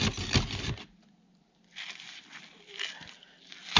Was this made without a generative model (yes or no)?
yes